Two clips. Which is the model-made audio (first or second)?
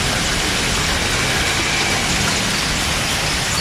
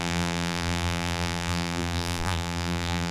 second